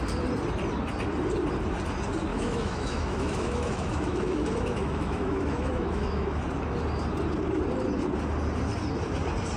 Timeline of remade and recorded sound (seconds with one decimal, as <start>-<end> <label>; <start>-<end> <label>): 0.0-2.3 recorded; 2.3-6.4 remade; 6.4-9.6 recorded